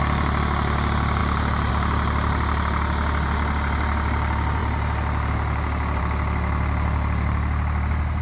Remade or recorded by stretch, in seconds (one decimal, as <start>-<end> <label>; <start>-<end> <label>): 0.0-1.2 recorded; 1.2-1.7 remade; 1.7-8.2 recorded